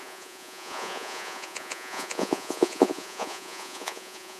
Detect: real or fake fake